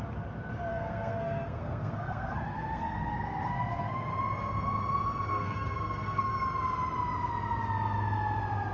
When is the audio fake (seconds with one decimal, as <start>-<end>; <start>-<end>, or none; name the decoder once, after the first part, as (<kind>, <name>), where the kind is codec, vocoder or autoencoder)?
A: 0.7-4.1 (codec, SNAC); 5.3-6.3